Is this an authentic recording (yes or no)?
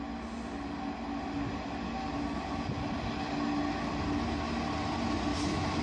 yes